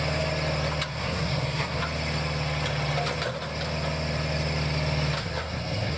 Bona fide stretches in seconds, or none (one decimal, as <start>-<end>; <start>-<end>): 0.0-0.9; 1.8-5.2

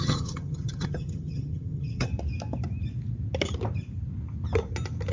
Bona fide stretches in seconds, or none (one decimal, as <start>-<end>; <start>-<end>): 2.1-5.1

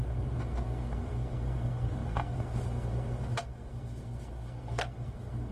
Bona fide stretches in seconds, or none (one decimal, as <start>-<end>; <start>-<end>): none

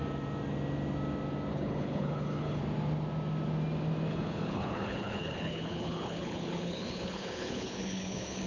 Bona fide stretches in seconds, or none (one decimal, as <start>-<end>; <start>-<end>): 0.0-1.5; 2.6-4.1

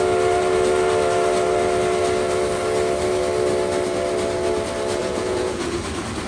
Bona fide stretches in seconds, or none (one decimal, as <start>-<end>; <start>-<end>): 0.0-5.0; 5.8-6.3

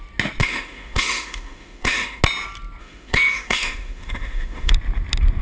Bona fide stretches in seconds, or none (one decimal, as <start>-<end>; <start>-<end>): 0.0-0.4; 2.2-2.8; 4.7-5.4

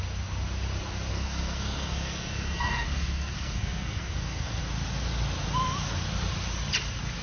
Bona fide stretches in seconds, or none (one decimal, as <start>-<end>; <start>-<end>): 0.0-1.1; 4.6-7.2

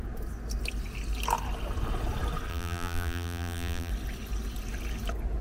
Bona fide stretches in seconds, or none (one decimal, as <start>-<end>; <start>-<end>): 0.0-2.5; 3.9-5.4